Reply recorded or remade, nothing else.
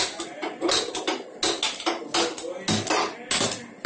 recorded